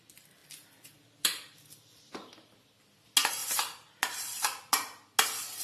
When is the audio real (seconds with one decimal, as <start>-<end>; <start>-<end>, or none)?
0.0-0.4; 2.0-3.4; 4.7-5.6